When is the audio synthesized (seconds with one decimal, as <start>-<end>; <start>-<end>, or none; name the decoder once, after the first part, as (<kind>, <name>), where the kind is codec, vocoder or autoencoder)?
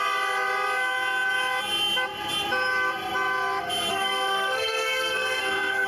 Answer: 3.9-5.9 (codec, SNAC)